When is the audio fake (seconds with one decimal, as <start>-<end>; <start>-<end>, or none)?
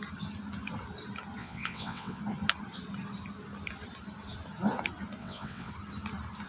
1.4-2.2; 5.2-5.7